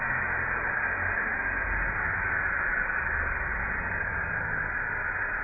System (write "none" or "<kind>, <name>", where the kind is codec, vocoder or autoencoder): none